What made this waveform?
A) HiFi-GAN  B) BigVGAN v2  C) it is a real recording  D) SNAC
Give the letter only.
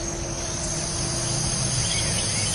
C